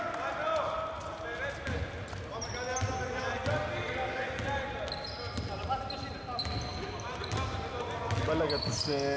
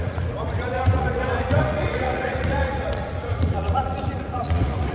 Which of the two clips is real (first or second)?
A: first